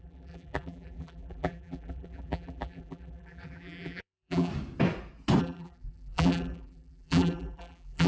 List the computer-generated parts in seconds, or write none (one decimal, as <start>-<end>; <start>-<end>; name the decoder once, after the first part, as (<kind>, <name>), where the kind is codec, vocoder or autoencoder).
0.0-4.5 (vocoder, BigVGAN v2); 5.4-8.1